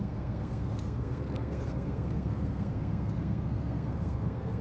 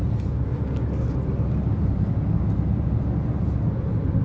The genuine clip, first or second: second